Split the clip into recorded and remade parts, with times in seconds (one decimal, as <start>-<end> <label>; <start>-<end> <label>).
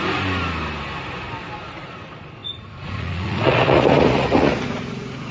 0.0-2.4 recorded; 2.4-5.3 remade